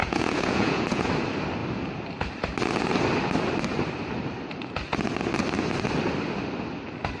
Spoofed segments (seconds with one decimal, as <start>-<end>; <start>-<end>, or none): 0.0-1.1